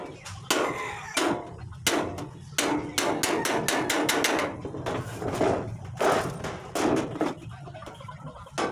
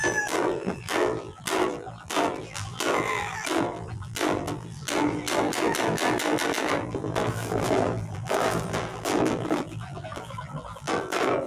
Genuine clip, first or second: first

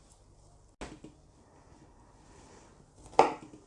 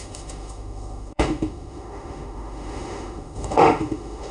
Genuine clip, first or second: first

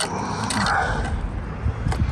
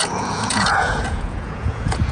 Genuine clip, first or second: first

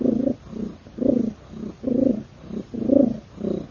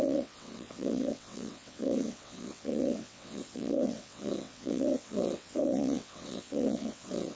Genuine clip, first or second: first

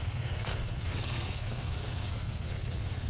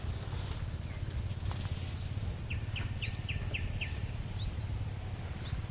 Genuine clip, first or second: second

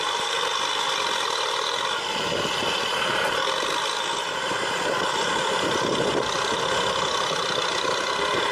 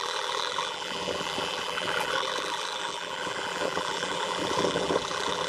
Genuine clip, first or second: first